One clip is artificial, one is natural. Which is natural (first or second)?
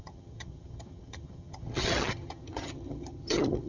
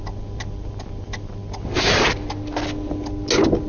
second